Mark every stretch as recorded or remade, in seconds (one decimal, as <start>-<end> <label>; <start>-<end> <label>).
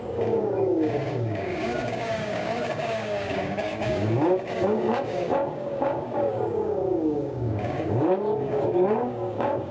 0.0-9.7 remade